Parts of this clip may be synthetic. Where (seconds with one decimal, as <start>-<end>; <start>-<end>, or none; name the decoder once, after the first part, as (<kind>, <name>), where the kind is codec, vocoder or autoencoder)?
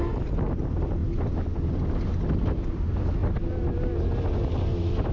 none